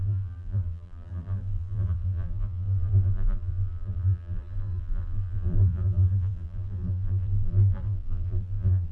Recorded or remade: remade